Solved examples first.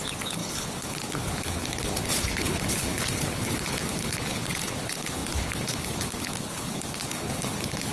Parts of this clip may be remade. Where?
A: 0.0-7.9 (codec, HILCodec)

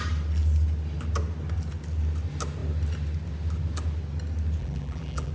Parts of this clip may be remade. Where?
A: 4.6-5.3 (vocoder, BigVGAN v2)

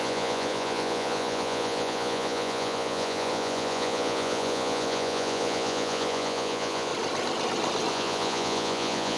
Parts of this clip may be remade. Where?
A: 0.0-6.9 (vocoder, Vocos); 7.9-9.2

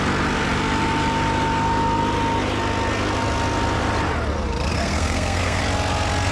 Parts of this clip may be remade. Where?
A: 4.7-5.6 (codec, SNAC)

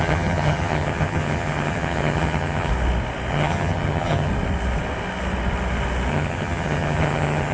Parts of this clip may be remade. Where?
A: 0.0-2.7 (vocoder, HiFi-GAN); 3.3-4.3; 6.1-7.5

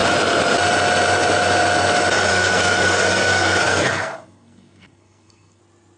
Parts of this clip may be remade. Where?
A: 2.3-5.6 (codec, SNAC)

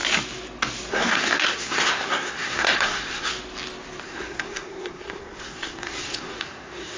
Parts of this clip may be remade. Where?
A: 0.9-3.3 (codec, SNAC); 4.0-7.0